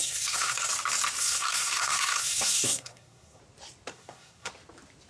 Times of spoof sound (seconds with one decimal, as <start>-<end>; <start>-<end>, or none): 0.0-0.7; 1.2-3.4; 3.9-4.5